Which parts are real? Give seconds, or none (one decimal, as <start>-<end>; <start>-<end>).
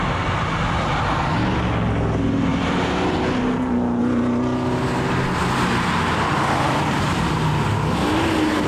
0.0-8.7